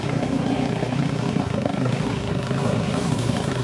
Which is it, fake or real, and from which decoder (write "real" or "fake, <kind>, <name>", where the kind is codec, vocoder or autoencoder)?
fake, codec, SNAC